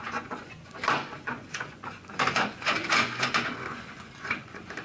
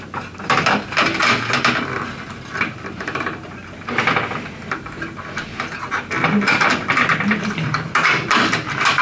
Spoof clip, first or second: first